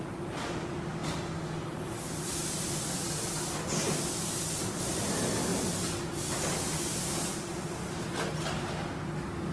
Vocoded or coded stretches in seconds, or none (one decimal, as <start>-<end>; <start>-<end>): none